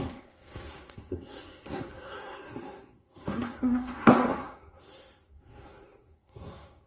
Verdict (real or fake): fake